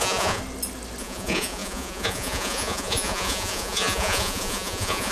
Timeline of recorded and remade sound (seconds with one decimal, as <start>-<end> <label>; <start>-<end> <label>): 0.0-0.4 remade; 0.4-1.0 recorded; 1.0-5.1 remade